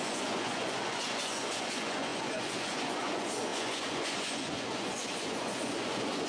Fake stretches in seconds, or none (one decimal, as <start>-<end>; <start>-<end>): 0.0-6.3